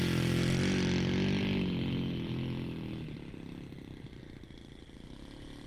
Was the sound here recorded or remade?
recorded